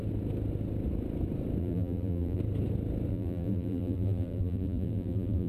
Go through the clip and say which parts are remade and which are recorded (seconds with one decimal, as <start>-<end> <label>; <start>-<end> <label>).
0.0-1.6 recorded; 1.6-2.4 remade; 2.4-3.1 recorded; 3.1-5.5 remade

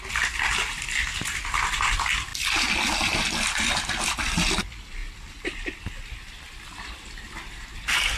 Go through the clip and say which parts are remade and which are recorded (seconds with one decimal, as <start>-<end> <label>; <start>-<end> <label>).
0.0-8.2 recorded

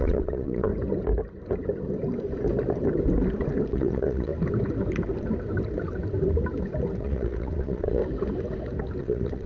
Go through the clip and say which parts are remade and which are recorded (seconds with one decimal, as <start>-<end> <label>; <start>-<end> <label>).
0.0-0.7 remade; 0.7-3.7 recorded; 3.7-4.3 remade; 4.3-7.0 recorded; 7.0-8.0 remade; 8.0-9.0 recorded; 9.0-9.5 remade

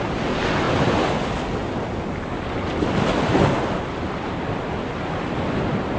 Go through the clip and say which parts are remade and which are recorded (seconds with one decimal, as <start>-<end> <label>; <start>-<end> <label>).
0.0-6.0 recorded

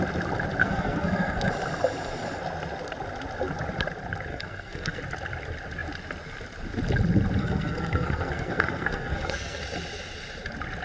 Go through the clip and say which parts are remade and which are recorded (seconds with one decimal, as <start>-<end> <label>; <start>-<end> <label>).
0.0-0.6 recorded; 0.6-1.5 remade; 1.5-4.3 recorded; 4.3-5.0 remade; 5.0-7.4 recorded; 7.4-9.6 remade; 9.6-10.8 recorded

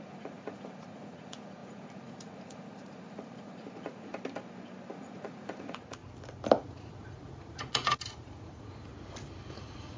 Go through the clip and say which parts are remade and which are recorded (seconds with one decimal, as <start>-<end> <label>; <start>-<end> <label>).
0.0-4.1 remade; 4.1-4.9 recorded; 4.9-6.0 remade; 6.0-6.6 recorded; 6.6-8.9 remade; 8.9-9.5 recorded; 9.5-10.0 remade